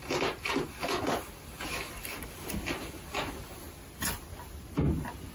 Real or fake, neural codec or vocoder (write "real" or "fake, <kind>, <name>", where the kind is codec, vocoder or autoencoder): real